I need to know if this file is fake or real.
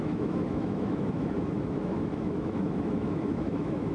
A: fake